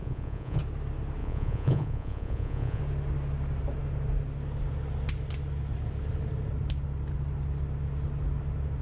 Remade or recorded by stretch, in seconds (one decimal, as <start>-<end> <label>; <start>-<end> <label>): 0.0-0.6 remade; 0.6-1.2 recorded; 1.2-2.8 remade; 2.8-8.8 recorded